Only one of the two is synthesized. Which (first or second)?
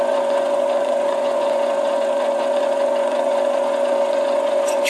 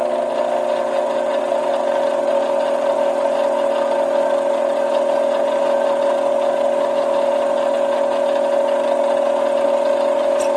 first